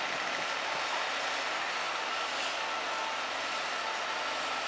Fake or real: real